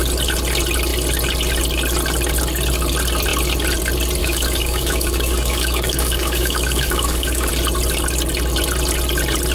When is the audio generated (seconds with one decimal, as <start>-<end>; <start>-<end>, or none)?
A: 4.2-7.5